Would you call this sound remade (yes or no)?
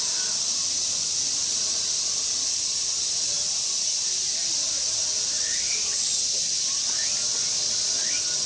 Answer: no